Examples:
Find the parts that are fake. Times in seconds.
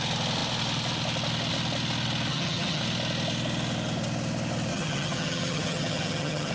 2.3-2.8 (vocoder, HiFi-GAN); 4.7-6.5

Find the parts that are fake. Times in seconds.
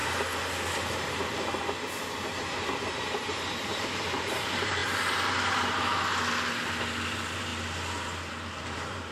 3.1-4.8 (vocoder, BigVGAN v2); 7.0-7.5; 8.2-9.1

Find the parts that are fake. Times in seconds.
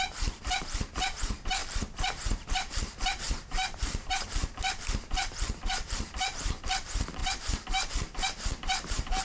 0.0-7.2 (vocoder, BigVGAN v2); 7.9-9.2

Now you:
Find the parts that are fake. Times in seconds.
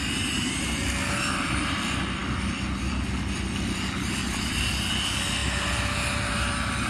none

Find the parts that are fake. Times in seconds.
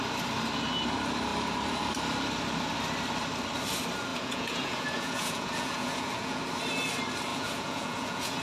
4.1-6.4 (vocoder, Vocos); 7.3-8.4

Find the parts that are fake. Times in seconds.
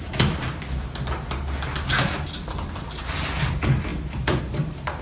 none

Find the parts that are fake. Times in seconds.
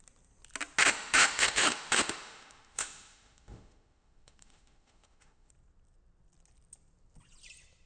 0.8-5.5 (autoencoder, DAC-VAE)